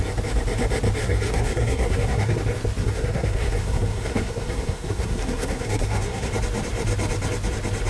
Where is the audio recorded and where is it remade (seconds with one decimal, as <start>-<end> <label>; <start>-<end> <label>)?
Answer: 0.0-1.0 recorded; 1.0-2.4 remade; 2.4-2.8 recorded; 2.8-6.3 remade; 6.3-7.9 recorded